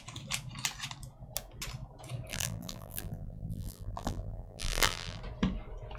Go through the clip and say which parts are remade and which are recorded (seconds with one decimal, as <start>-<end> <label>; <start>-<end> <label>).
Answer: 0.0-2.3 recorded; 2.3-5.2 remade; 5.2-6.0 recorded